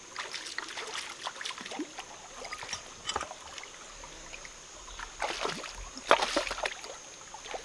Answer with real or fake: real